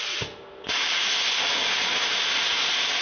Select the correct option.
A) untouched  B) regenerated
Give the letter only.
A